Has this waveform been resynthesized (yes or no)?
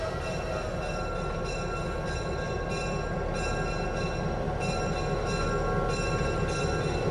no